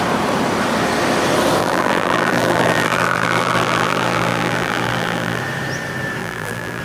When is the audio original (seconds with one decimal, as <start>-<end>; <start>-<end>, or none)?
0.0-1.6; 5.4-6.2